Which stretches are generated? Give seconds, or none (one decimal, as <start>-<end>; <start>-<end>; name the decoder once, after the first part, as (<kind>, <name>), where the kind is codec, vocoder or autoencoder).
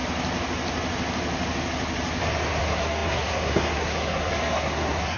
2.6-5.2 (codec, SNAC)